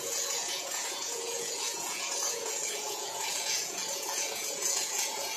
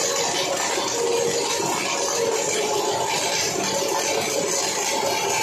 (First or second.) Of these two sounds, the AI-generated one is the first